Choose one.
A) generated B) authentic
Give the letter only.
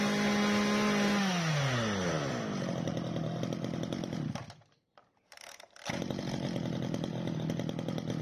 B